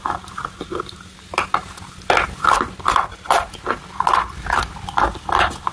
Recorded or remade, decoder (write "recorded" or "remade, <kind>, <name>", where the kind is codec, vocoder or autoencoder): recorded